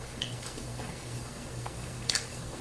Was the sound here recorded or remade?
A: remade